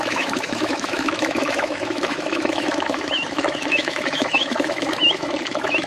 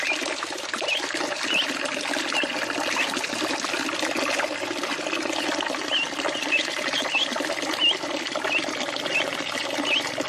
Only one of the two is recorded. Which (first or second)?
second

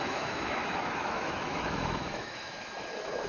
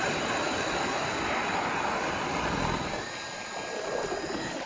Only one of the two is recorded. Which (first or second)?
second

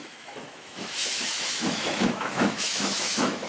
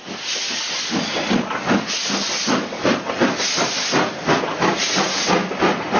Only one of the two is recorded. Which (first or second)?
second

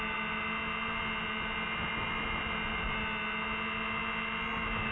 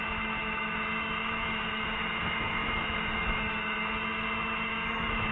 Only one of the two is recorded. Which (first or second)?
first